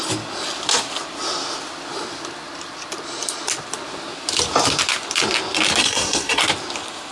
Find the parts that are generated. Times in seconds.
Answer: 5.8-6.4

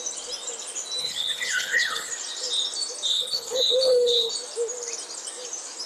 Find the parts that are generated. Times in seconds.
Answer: 1.0-2.1; 3.1-4.3

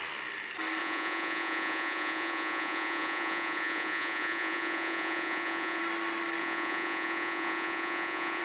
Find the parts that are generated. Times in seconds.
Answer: 0.8-5.8; 6.4-8.4

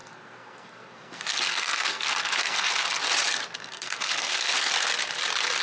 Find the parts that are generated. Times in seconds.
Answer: 0.0-2.7; 3.6-4.7

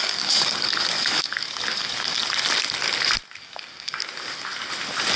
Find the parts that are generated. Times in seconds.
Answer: 0.0-2.2; 3.4-4.0

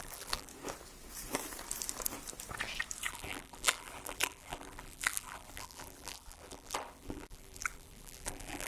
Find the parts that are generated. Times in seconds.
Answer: 0.0-0.5; 3.1-8.7